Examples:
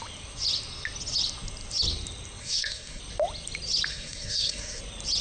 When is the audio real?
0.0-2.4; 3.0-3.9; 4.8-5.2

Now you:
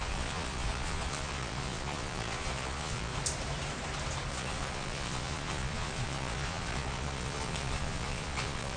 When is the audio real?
3.1-4.3